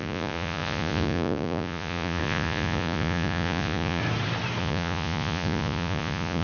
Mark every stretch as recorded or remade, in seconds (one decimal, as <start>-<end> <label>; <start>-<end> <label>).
0.0-4.0 remade; 4.0-4.6 recorded; 4.6-6.4 remade